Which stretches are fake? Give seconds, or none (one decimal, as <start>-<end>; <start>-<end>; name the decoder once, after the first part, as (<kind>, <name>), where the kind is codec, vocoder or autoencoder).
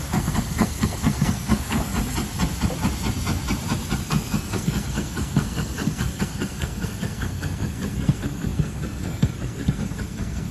0.0-1.9 (codec, SNAC); 4.0-10.5